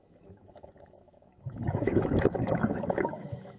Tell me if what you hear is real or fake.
fake